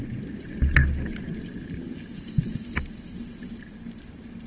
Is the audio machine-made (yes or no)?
no